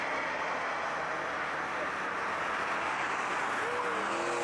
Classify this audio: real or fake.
real